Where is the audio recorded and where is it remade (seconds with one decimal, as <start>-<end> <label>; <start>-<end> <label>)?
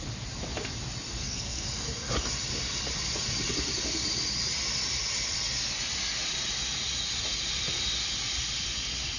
0.0-1.2 recorded; 1.2-2.1 remade; 2.1-9.2 recorded